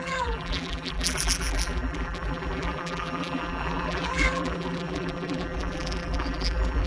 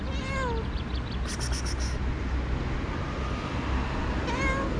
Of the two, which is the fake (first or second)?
first